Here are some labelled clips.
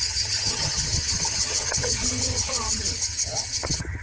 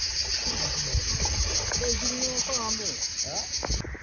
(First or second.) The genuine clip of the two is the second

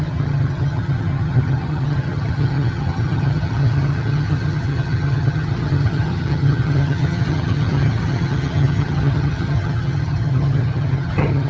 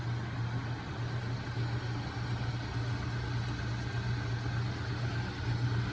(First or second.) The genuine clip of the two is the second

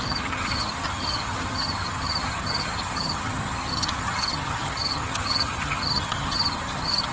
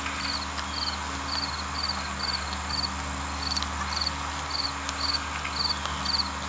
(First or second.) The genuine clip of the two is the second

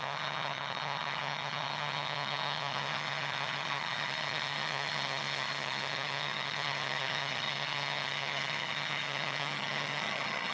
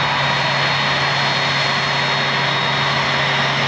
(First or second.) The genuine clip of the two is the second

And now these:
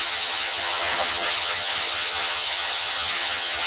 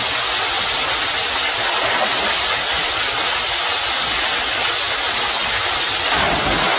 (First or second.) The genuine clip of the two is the second